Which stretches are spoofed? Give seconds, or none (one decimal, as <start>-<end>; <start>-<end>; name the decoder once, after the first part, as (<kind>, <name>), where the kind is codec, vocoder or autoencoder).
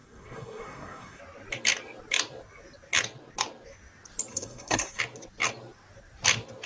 0.0-1.2 (codec, SNAC); 4.3-5.0